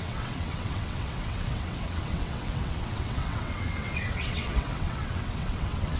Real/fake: fake